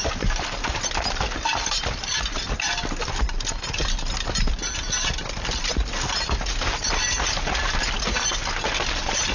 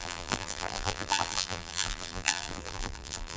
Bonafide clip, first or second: first